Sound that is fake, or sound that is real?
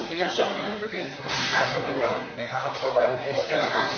fake